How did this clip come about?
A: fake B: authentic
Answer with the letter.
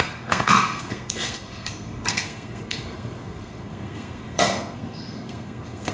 A